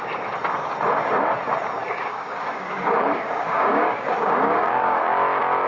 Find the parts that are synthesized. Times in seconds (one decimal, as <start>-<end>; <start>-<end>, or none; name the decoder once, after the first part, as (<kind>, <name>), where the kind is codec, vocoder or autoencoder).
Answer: 1.8-5.0 (codec, DAC)